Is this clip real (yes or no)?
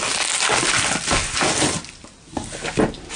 yes